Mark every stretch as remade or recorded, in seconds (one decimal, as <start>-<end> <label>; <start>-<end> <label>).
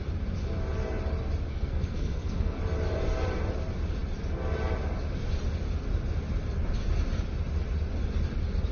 0.0-1.5 recorded; 1.5-2.6 remade; 2.6-8.7 recorded